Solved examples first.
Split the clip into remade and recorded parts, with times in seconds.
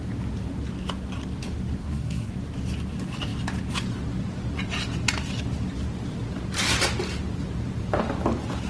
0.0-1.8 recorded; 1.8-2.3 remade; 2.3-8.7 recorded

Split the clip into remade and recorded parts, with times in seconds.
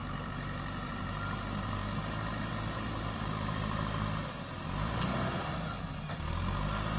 0.0-0.9 remade; 0.9-1.8 recorded; 1.8-5.8 remade; 5.8-7.0 recorded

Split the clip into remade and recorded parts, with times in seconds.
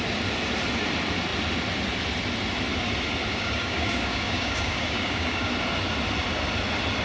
0.0-3.3 recorded; 3.3-5.5 remade; 5.5-7.0 recorded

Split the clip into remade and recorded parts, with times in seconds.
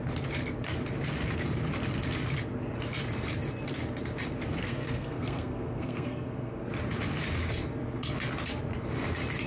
0.0-4.6 recorded; 4.6-6.7 remade; 6.7-9.5 recorded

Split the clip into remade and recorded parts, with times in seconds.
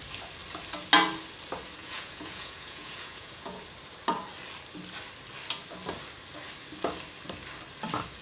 0.0-1.8 recorded; 1.8-3.6 remade; 3.6-8.2 recorded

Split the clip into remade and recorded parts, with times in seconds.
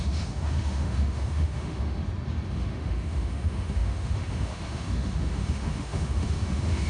0.0-2.0 remade; 2.0-2.5 recorded; 2.5-6.9 remade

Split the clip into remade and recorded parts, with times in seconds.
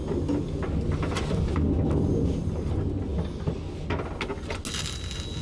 0.0-5.4 recorded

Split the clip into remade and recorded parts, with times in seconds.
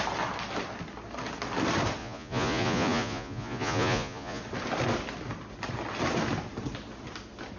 0.0-2.0 recorded; 2.0-4.4 remade; 4.4-7.6 recorded